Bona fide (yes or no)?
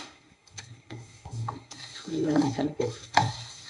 no